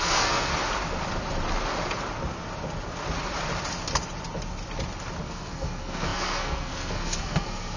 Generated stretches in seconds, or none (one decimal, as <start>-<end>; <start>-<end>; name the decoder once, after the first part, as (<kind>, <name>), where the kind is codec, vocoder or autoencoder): 0.0-0.5 (codec, SNAC); 5.2-7.8